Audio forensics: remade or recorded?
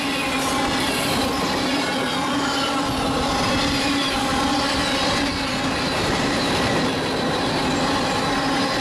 recorded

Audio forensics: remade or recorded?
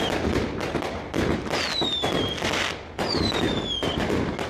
recorded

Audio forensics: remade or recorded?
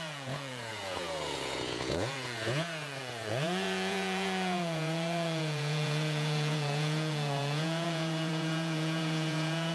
remade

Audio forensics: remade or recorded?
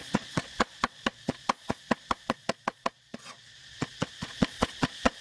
remade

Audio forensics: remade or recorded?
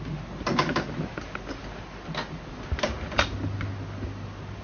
recorded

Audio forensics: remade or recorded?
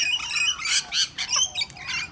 recorded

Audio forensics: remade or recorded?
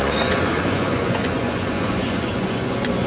remade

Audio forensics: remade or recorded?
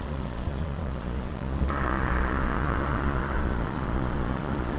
remade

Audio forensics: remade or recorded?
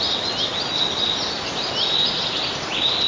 recorded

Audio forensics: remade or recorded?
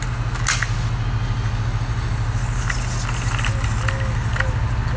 recorded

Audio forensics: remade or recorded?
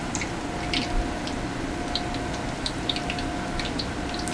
recorded